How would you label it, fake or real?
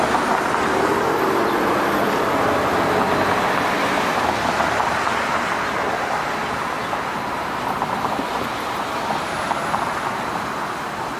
real